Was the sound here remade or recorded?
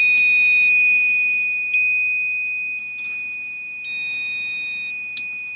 recorded